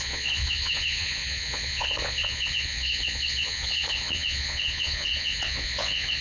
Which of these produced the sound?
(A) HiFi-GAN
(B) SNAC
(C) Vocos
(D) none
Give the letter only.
C